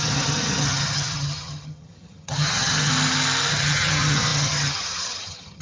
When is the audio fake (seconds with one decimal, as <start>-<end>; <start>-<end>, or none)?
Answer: 0.0-2.9; 3.5-5.6